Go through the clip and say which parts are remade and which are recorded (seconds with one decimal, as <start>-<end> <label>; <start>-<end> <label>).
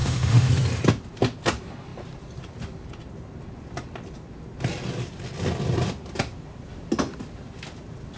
0.0-0.5 remade; 0.5-8.2 recorded